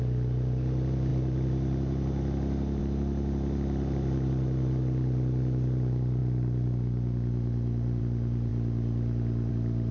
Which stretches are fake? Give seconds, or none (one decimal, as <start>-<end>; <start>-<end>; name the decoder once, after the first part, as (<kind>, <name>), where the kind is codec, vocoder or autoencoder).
none